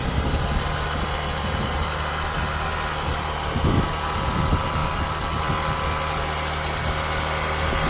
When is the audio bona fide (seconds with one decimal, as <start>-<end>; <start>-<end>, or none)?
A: 0.0-7.9

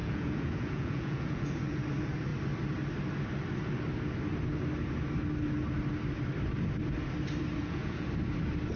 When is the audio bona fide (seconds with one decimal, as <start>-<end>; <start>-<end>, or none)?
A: 1.8-7.6; 8.1-8.8

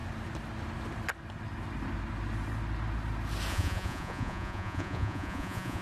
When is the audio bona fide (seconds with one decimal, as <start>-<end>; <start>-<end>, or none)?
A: 0.0-3.5

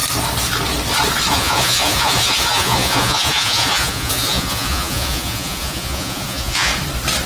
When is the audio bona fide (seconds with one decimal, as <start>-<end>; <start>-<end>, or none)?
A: 0.0-1.3; 6.7-7.3